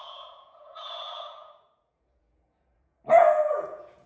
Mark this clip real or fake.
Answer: fake